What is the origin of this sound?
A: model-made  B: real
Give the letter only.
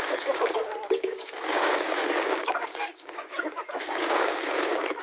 A